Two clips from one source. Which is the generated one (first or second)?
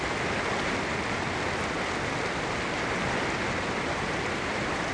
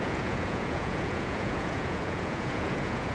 second